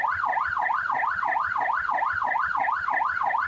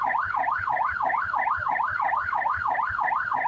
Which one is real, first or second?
first